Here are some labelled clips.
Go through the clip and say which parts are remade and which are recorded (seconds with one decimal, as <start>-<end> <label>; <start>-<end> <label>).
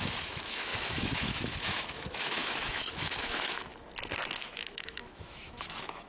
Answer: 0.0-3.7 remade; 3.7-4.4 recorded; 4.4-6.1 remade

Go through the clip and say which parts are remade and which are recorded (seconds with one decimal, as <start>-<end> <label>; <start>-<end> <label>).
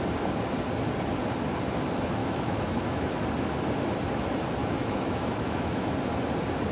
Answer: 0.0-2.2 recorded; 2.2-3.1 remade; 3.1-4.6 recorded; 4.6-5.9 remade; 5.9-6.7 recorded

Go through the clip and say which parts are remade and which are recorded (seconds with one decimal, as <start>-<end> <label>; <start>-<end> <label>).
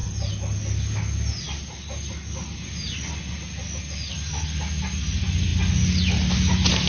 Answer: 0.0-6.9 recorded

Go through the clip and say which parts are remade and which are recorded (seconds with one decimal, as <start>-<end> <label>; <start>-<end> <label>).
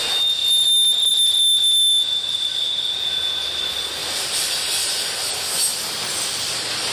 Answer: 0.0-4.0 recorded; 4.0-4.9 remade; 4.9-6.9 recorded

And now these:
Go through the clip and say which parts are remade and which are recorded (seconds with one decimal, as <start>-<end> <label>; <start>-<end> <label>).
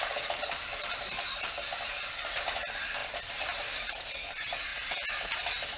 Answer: 0.0-4.7 remade; 4.7-5.8 recorded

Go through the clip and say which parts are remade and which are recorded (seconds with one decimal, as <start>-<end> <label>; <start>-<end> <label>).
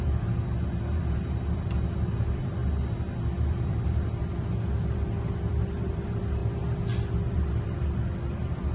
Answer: 0.0-2.6 remade; 2.6-3.4 recorded; 3.4-8.7 remade